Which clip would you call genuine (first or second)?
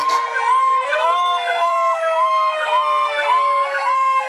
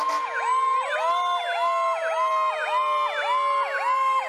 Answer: second